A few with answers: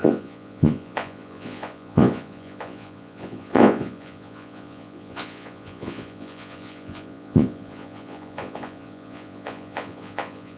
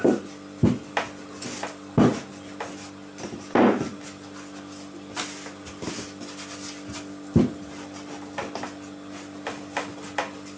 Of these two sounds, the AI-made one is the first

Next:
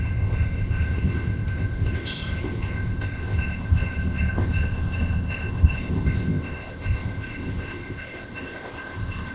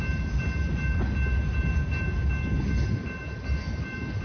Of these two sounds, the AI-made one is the first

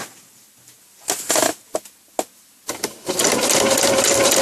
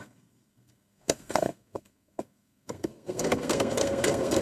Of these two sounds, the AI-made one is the second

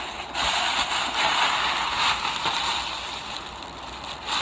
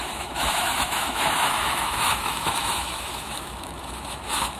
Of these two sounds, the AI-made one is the second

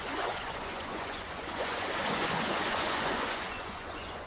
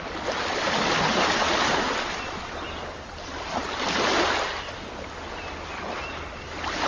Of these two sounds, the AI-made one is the first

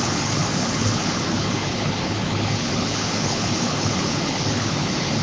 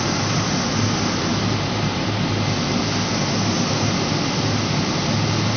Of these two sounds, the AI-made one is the first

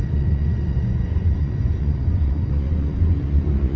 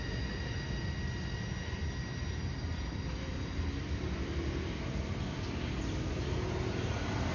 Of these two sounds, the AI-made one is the first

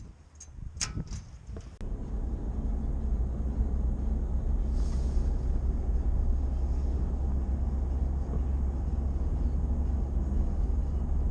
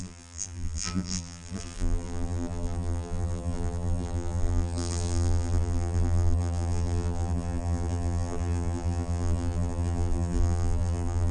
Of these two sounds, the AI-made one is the second